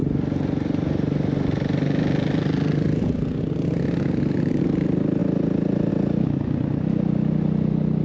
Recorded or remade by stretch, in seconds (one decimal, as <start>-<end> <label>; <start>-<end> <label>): 0.0-8.0 recorded